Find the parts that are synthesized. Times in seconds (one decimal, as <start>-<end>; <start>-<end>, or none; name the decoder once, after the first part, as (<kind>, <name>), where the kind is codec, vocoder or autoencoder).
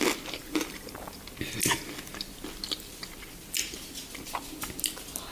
0.4-1.1 (vocoder, BigVGAN v2)